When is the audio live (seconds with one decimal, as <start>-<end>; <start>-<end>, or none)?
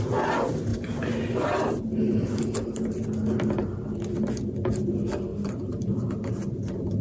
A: 0.0-0.7; 2.4-5.3; 6.1-7.0